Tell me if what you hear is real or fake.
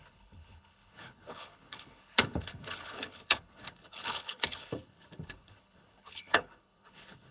fake